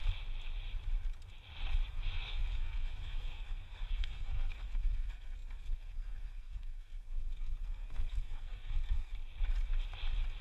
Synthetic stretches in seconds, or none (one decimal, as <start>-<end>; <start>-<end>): 1.9-9.1